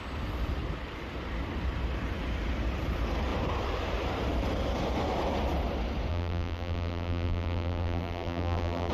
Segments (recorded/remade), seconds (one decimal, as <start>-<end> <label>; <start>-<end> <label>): 0.0-6.1 recorded; 6.1-8.9 remade